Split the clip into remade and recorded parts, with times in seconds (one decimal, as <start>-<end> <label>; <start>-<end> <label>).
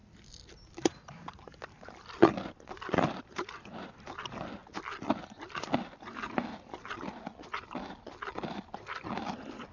0.0-9.7 recorded